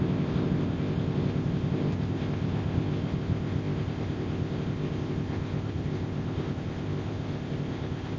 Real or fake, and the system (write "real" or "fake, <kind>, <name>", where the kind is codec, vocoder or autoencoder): fake, codec, ZipCodec